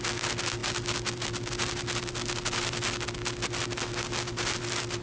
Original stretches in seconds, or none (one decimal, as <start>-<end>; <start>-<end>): 0.0-5.0